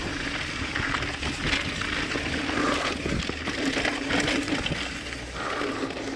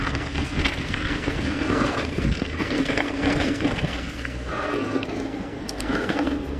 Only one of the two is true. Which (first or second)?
first